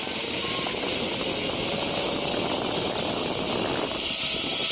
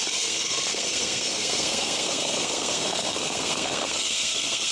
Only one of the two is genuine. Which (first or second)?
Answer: first